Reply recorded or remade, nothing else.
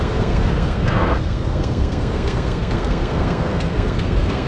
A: remade